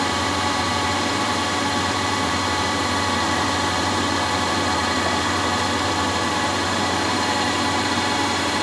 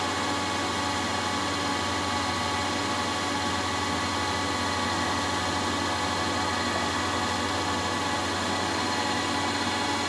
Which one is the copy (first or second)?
first